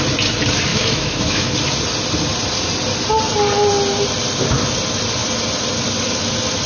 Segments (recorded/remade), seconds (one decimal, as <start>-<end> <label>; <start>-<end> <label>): 0.0-0.7 recorded; 0.7-1.5 remade; 1.5-6.7 recorded